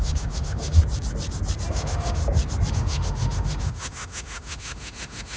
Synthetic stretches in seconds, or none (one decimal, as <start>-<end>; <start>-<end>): 0.0-0.8; 1.7-2.2; 2.7-5.4